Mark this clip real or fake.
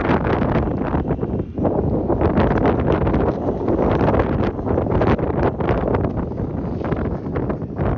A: real